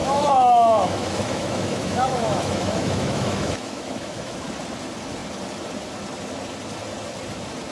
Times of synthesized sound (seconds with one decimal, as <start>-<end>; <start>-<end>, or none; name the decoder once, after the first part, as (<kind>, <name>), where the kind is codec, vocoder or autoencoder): 0.0-4.5 (autoencoder, DAC-VAE)